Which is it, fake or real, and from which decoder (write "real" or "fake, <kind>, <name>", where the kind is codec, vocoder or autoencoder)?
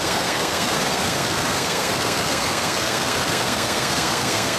fake, codec, SNAC